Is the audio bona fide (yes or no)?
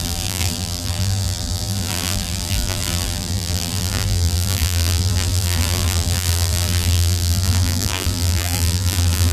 no